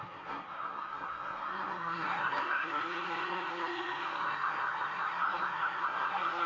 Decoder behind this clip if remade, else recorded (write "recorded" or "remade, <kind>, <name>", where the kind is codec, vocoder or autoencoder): remade, codec, SNAC